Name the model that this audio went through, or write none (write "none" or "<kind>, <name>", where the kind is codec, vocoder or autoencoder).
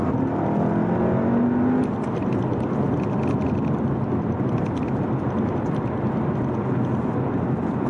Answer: none